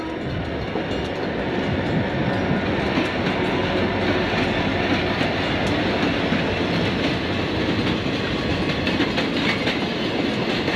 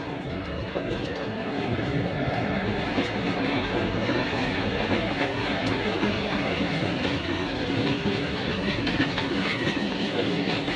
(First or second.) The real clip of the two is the first